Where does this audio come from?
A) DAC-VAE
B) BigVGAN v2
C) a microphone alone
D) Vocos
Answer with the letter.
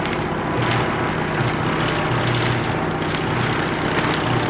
C